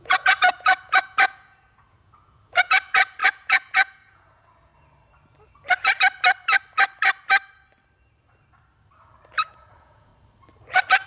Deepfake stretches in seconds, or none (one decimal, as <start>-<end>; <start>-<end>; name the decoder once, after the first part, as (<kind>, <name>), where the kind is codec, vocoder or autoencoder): 0.0-4.7 (vocoder, Vocos); 9.4-10.1